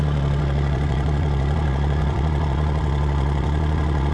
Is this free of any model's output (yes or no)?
no